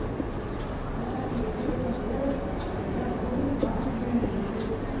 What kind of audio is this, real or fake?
real